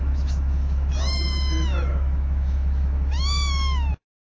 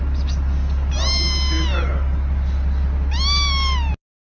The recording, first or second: second